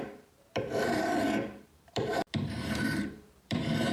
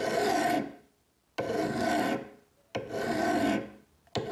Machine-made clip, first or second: first